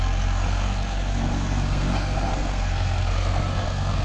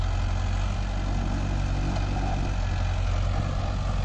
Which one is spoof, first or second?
first